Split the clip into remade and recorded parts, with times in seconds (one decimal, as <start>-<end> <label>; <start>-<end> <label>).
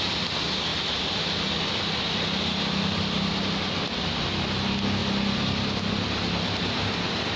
0.0-7.4 recorded